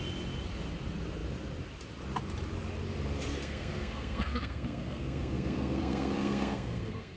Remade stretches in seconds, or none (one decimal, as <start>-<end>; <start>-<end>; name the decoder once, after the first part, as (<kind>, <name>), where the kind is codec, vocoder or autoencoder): 3.3-7.2 (codec, SNAC)